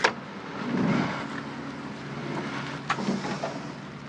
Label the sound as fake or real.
real